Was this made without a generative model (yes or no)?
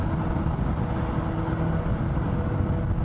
yes